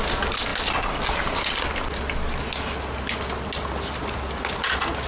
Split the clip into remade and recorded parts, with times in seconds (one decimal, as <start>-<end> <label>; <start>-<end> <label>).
0.0-5.1 recorded